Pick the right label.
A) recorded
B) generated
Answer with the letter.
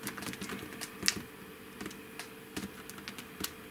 A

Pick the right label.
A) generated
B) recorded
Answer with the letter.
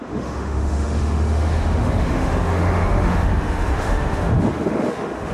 A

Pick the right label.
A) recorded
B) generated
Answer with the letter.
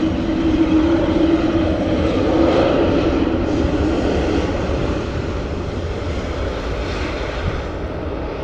A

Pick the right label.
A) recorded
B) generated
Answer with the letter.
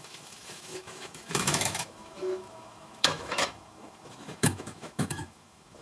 B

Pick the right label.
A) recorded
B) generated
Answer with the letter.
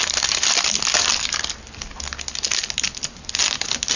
A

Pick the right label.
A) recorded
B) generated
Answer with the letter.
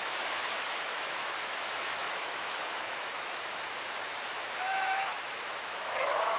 B